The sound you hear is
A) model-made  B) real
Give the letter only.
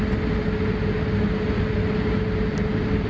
B